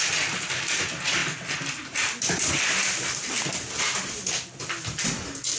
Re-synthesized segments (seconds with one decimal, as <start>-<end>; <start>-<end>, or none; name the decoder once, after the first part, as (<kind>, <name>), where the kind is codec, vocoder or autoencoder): none